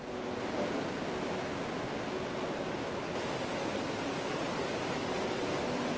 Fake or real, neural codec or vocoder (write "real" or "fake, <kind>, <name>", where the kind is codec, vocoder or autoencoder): real